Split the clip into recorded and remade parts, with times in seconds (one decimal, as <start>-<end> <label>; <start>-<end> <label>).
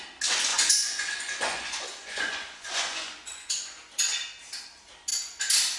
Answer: 0.0-0.5 recorded; 0.5-4.0 remade; 4.0-5.8 recorded